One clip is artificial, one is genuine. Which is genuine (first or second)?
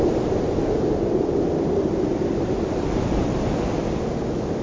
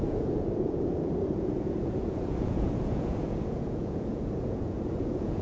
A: first